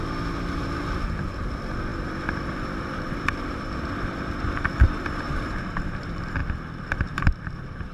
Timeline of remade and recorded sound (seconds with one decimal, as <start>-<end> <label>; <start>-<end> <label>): 0.0-6.4 remade; 6.4-6.9 recorded; 6.9-7.9 remade